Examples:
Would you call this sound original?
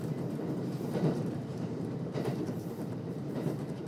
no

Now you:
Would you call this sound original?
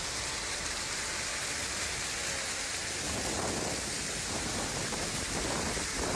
yes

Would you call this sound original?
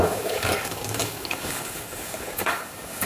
no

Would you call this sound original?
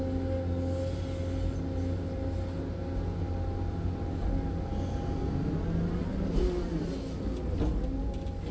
yes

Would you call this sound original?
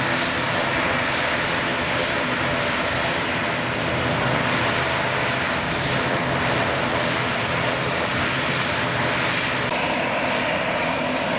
yes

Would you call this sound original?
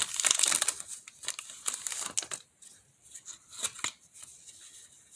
yes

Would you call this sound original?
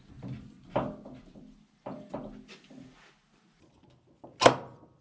yes